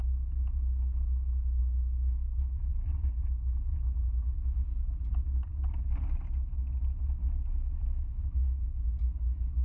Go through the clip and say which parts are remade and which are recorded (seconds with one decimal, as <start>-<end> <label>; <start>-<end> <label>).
0.0-1.6 recorded; 1.6-2.7 remade; 2.7-9.6 recorded

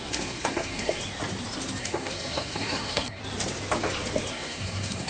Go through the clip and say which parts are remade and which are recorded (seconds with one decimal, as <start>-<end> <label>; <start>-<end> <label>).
0.0-1.0 remade; 1.0-1.8 recorded; 1.8-3.2 remade; 3.2-4.3 recorded; 4.3-5.1 remade

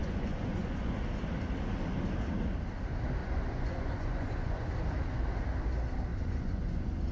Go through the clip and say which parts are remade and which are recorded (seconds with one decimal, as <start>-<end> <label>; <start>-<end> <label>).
0.0-1.0 remade; 1.0-3.2 recorded; 3.2-4.7 remade; 4.7-6.1 recorded; 6.1-7.1 remade